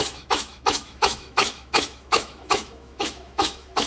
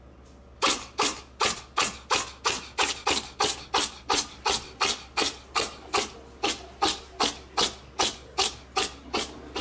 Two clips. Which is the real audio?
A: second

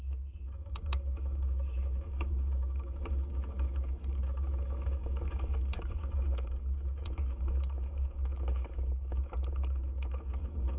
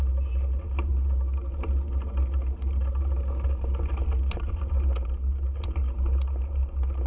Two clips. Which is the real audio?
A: second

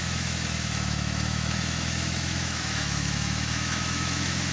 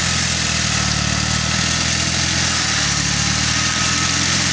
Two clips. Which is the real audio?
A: second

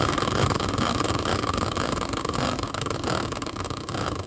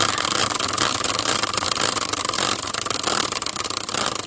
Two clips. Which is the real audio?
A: second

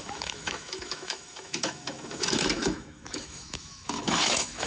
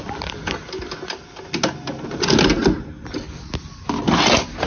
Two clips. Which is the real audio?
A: second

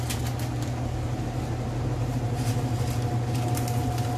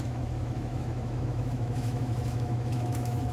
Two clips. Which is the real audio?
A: first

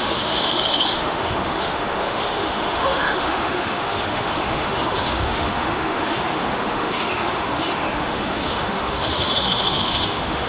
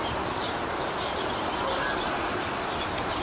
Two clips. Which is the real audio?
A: second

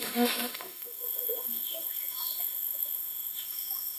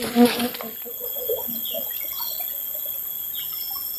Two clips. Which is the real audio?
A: second